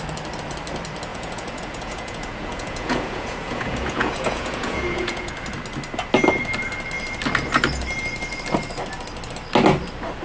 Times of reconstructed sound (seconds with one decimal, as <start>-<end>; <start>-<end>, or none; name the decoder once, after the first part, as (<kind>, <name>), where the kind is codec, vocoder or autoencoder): 1.1-5.3 (vocoder, Vocos)